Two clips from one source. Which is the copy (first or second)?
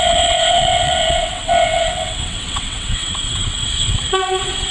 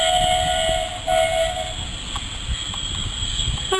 first